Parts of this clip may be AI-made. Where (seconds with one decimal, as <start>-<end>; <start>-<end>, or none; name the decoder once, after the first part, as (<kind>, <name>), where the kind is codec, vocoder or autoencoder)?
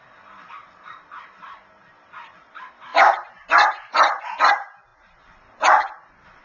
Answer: 0.0-6.4 (vocoder, BigVGAN v2)